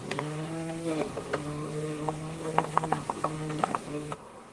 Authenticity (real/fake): fake